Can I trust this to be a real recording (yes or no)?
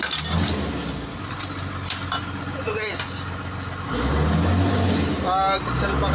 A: yes